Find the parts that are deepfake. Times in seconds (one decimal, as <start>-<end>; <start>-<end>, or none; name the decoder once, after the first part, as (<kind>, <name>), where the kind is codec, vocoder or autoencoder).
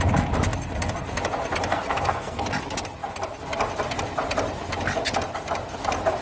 1.7-2.4 (codec, SNAC)